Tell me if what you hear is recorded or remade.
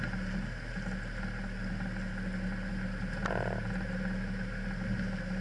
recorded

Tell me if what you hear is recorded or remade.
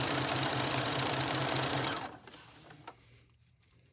remade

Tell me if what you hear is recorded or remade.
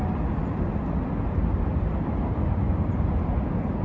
recorded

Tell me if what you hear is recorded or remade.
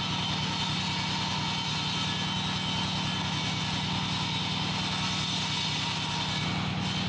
recorded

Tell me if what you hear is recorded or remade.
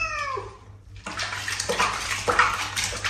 recorded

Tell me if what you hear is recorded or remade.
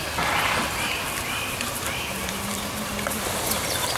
recorded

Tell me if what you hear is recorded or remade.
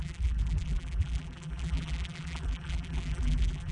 remade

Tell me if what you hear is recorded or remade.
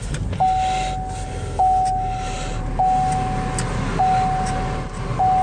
recorded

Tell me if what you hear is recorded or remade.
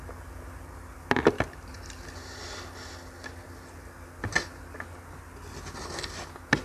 recorded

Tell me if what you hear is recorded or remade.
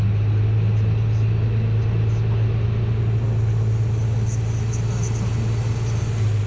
recorded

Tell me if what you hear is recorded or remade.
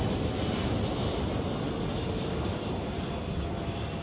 recorded